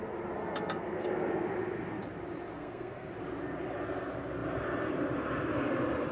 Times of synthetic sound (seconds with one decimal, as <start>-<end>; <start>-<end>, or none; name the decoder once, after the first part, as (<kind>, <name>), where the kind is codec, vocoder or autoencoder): 0.4-1.2 (codec, SNAC); 2.5-3.1